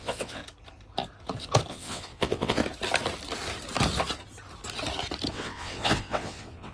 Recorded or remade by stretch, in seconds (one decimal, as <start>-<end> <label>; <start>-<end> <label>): 0.0-0.4 remade; 0.4-1.7 recorded; 1.7-2.6 remade; 2.6-5.3 recorded; 5.3-6.7 remade

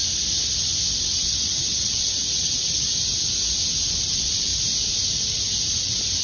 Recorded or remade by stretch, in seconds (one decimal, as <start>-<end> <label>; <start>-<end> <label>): 0.0-1.0 recorded; 1.0-2.9 remade; 2.9-4.0 recorded; 4.0-4.5 remade; 4.5-5.8 recorded; 5.8-6.2 remade

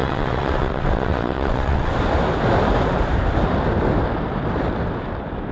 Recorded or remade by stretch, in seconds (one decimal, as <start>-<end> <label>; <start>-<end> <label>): 0.0-1.9 remade; 1.9-5.5 recorded

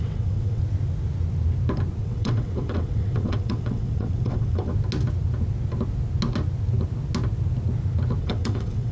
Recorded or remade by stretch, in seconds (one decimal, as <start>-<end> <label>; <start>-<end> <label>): 0.0-0.6 remade; 0.6-2.0 recorded; 2.0-4.7 remade; 4.7-8.2 recorded; 8.2-8.9 remade

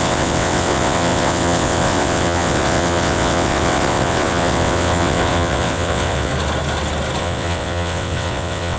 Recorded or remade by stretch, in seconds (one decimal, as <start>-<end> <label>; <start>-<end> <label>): 0.0-6.3 remade; 6.3-7.2 recorded; 7.2-8.8 remade

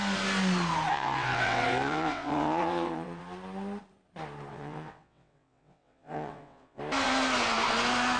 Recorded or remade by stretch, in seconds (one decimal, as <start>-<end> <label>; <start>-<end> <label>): 0.0-0.9 recorded; 0.9-3.2 remade; 3.2-4.5 recorded; 4.5-6.8 remade; 6.8-8.2 recorded

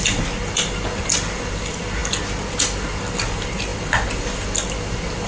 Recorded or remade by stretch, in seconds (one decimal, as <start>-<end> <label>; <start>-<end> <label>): 0.0-5.3 recorded

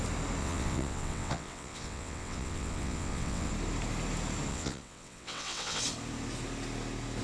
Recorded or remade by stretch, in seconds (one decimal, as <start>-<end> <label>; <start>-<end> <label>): 0.0-0.4 recorded; 0.4-3.5 remade; 3.5-4.5 recorded; 4.5-5.8 remade; 5.8-7.2 recorded